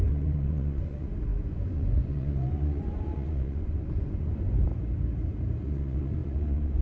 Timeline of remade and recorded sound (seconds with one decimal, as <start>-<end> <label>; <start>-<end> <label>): 0.0-4.7 remade; 4.7-5.6 recorded; 5.6-6.8 remade